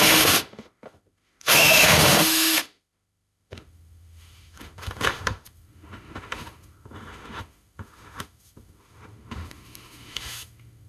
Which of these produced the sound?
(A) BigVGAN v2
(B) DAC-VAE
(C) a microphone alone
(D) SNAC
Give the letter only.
B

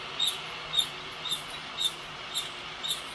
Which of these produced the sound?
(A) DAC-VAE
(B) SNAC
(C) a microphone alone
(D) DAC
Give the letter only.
C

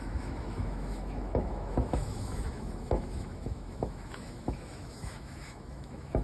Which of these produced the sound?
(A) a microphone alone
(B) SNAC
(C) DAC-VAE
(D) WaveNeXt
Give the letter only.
C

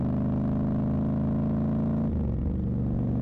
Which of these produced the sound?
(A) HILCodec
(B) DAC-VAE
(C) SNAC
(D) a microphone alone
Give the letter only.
D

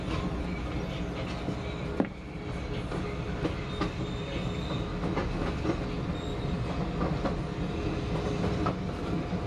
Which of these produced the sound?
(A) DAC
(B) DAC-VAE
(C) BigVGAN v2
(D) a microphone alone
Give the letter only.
D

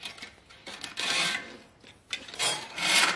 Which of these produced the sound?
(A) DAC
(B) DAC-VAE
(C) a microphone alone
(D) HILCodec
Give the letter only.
C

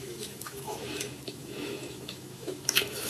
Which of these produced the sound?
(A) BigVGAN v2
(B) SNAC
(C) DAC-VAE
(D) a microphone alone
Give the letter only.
C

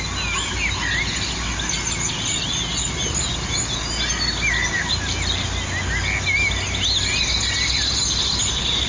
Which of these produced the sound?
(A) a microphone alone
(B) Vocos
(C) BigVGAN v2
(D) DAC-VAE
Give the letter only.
A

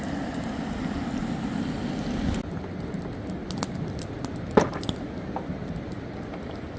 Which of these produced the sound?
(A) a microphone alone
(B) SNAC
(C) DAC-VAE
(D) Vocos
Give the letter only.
A